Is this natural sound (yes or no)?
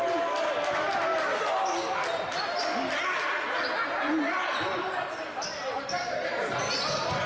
yes